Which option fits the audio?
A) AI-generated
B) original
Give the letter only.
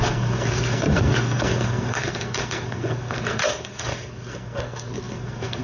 A